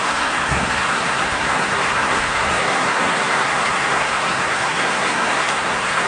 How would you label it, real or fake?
fake